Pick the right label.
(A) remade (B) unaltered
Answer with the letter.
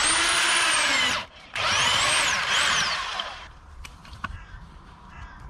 A